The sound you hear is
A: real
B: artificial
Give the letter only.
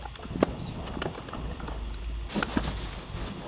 A